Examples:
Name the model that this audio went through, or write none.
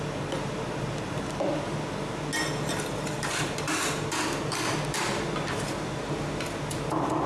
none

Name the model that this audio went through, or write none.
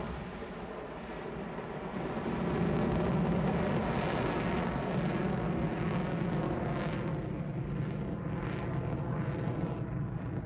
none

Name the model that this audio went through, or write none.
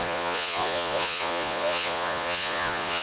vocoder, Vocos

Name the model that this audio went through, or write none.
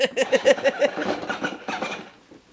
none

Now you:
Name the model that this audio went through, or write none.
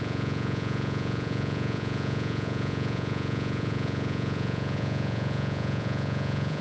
vocoder, Vocos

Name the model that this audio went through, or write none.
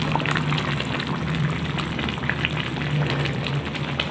none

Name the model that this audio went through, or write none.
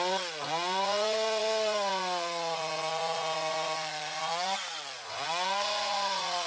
vocoder, Vocos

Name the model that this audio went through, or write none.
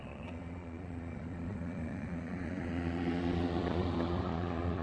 vocoder, Vocos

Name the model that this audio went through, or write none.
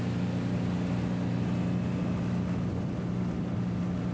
none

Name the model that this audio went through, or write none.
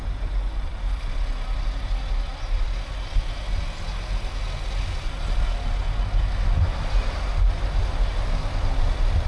none